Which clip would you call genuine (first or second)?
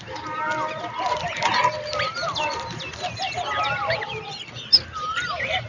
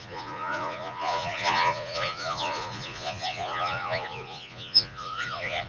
first